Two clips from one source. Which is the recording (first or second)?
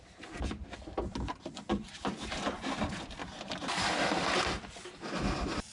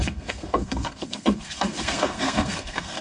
first